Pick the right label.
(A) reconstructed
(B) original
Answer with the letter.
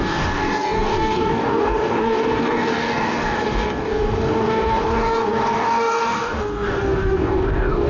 A